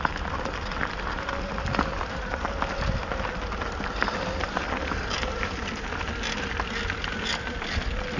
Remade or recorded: recorded